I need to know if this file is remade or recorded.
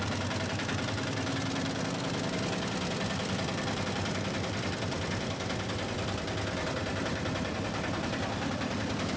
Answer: remade